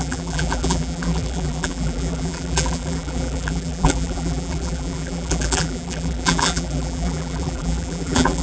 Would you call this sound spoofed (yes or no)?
yes